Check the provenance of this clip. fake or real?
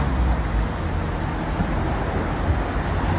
real